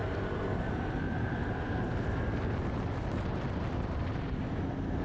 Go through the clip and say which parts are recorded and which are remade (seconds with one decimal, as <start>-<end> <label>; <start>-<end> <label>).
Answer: 0.0-1.8 remade; 1.8-5.0 recorded